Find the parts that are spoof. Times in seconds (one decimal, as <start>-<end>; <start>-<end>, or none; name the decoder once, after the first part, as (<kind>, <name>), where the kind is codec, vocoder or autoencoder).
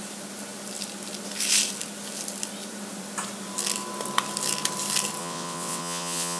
5.2-6.4 (vocoder, WaveNeXt)